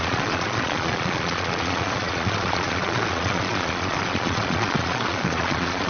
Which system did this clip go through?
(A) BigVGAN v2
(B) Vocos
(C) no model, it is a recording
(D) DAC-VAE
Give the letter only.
B